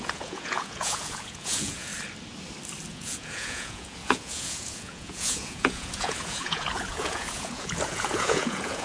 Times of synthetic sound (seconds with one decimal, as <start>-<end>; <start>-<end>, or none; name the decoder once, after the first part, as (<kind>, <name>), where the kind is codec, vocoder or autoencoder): 0.0-1.9 (vocoder, Vocos); 2.9-8.8